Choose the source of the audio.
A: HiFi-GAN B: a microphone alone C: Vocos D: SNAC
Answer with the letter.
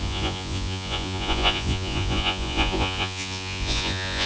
C